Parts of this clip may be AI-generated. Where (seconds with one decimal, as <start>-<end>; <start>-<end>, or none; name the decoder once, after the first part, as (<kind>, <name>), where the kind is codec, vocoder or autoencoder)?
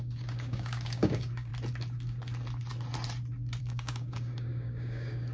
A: 0.0-1.5 (codec, DAC); 3.6-5.3